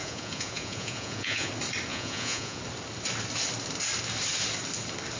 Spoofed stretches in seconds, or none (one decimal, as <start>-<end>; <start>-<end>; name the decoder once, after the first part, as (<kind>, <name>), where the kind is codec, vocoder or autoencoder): 0.0-1.5 (vocoder, Vocos); 1.9-2.6

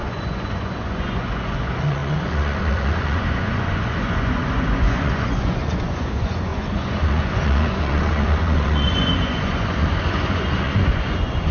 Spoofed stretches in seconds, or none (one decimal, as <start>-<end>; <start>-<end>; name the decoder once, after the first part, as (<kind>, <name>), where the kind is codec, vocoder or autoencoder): 0.0-11.5 (vocoder, Vocos)

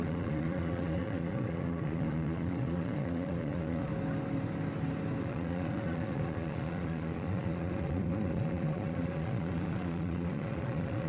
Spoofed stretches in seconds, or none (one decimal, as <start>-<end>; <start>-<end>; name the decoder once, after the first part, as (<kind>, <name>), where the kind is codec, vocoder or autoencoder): 0.0-3.9 (vocoder, Vocos); 5.2-11.1